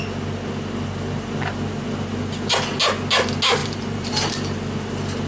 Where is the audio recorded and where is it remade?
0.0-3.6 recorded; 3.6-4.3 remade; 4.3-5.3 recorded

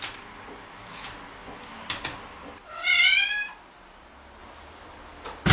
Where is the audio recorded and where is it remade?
0.0-2.6 recorded; 2.6-3.3 remade; 3.3-4.4 recorded; 4.4-5.5 remade

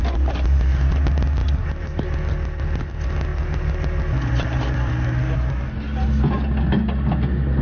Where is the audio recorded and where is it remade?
0.0-1.4 recorded; 1.4-2.0 remade; 2.0-7.6 recorded

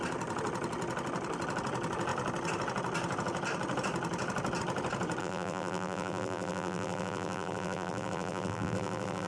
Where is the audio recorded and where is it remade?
0.0-5.2 recorded; 5.2-9.3 remade

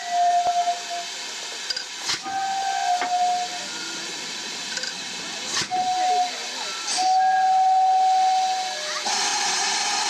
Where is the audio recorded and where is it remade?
0.0-9.3 recorded; 9.3-10.1 remade